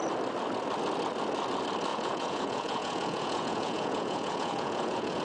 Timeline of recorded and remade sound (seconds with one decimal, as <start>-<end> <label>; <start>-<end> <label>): 0.0-1.9 recorded; 1.9-5.2 remade